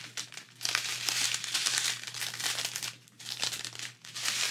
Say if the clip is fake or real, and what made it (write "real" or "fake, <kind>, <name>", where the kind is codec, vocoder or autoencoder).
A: real